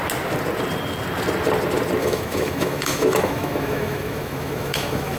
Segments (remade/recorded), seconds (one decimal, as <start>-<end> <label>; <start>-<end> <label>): 0.0-2.0 recorded; 2.0-5.2 remade